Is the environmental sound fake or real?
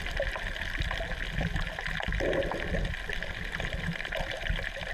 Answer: real